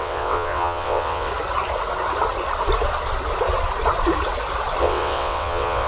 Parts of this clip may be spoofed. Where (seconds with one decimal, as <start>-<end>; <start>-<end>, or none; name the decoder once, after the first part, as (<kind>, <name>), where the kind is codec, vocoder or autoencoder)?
0.0-1.3 (vocoder, WaveNeXt); 4.8-5.9